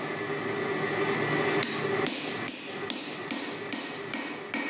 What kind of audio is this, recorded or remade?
recorded